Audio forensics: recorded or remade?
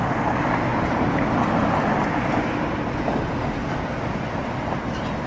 recorded